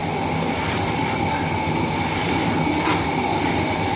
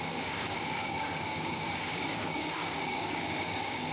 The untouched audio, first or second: first